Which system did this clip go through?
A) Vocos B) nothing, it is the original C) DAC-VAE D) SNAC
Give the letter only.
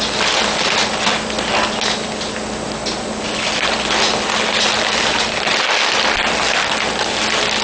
B